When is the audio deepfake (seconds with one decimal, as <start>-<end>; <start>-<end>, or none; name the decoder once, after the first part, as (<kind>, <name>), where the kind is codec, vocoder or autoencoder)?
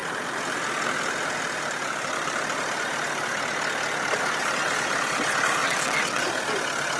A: 5.6-6.2 (vocoder, WaveNeXt)